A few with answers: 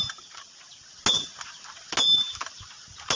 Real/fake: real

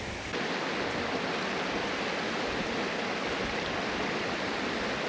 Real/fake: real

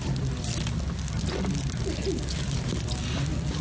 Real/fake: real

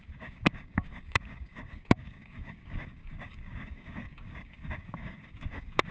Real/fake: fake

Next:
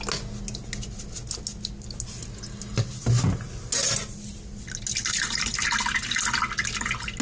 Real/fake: real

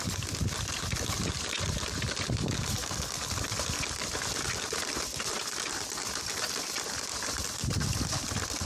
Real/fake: real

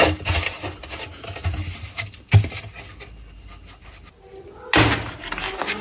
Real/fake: real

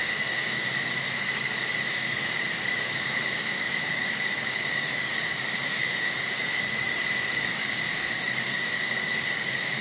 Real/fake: fake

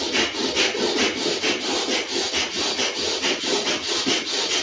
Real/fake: real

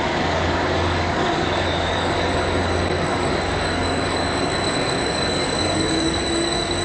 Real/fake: fake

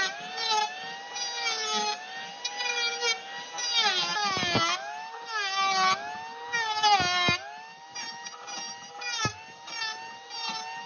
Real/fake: real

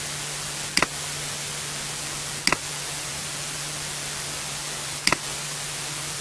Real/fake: real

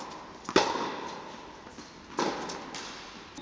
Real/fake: real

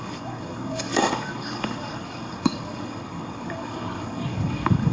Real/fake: fake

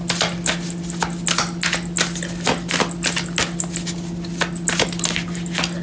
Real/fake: real